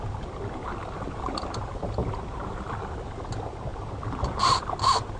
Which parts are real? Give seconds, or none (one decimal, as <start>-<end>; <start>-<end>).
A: 0.0-0.8; 2.2-3.7; 4.7-5.2